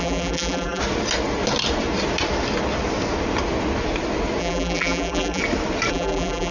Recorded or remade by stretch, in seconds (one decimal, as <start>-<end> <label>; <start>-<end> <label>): 0.0-0.8 remade; 0.8-4.4 recorded; 4.4-5.4 remade; 5.4-5.9 recorded; 5.9-6.5 remade